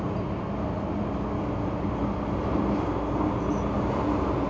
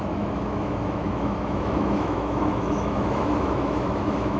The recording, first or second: first